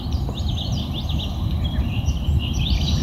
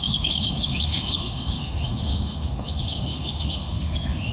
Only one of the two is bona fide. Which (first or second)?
first